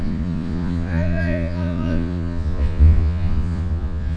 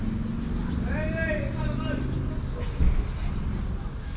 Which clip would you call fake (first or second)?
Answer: first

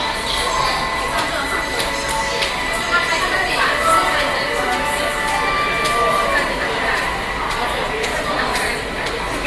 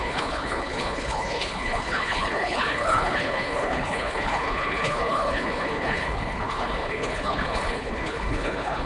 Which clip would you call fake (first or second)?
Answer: second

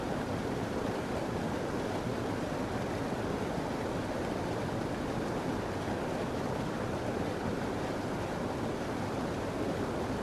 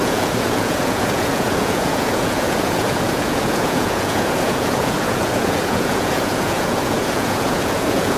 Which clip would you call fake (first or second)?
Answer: second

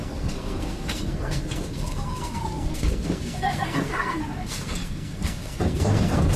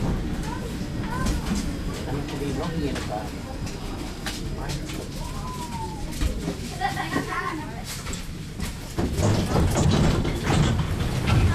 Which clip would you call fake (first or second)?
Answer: first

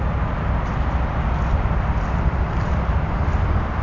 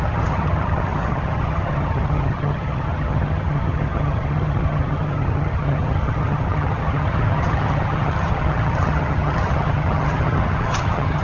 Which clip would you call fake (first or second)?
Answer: second